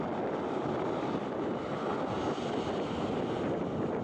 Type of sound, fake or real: real